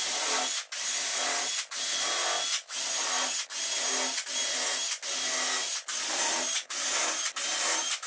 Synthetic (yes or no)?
no